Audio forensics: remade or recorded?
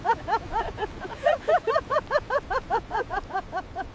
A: recorded